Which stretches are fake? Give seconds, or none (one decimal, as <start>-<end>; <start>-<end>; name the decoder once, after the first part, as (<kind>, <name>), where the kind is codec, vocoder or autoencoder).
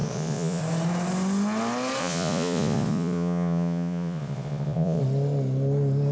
0.0-0.6 (vocoder, Vocos); 2.0-5.0